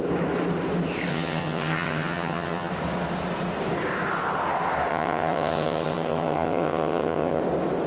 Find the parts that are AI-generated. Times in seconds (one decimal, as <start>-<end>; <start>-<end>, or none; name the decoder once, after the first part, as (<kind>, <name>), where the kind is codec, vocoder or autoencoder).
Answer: 1.1-2.7 (vocoder, HiFi-GAN); 4.9-7.4